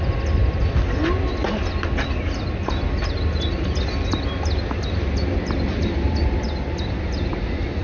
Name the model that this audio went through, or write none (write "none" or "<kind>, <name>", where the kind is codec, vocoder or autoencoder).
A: none